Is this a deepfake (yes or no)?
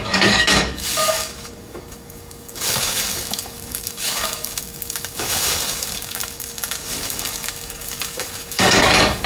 yes